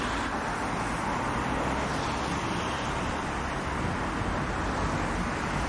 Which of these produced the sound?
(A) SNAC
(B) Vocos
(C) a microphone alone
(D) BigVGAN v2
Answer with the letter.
C